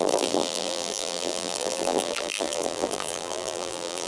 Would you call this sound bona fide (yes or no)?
no